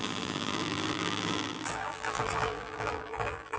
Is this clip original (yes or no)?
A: no